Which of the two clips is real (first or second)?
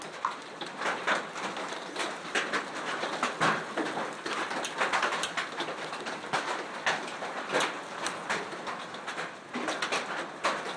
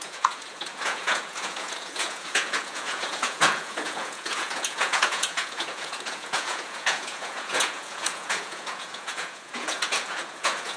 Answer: first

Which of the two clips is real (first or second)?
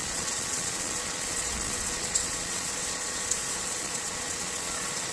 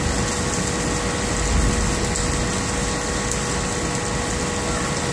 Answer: second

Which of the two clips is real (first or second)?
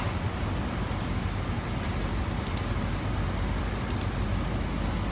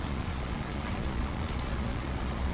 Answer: first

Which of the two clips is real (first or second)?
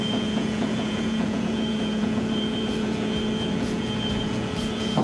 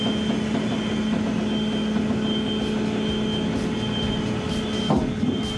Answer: second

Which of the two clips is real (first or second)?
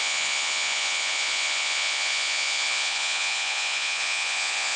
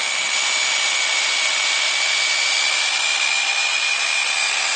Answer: second